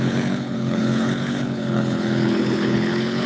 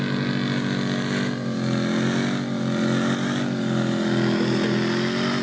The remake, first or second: first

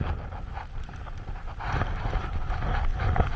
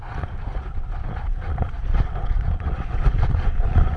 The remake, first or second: second